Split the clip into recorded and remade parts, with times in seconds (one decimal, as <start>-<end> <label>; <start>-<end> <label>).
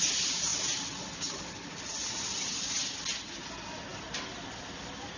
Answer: 0.0-0.5 recorded; 0.5-1.2 remade; 1.2-2.0 recorded; 2.0-2.7 remade; 2.7-5.2 recorded